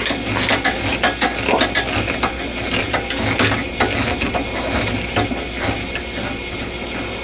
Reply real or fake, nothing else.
real